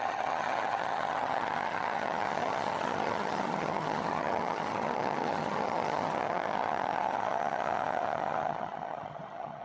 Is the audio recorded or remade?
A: remade